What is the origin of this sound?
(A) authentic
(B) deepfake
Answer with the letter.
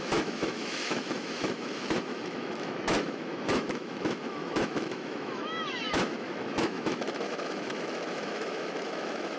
B